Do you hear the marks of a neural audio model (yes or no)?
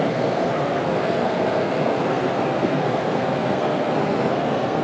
yes